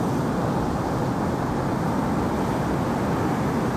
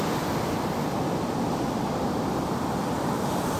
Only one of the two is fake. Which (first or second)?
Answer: second